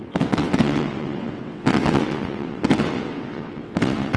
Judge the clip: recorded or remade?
remade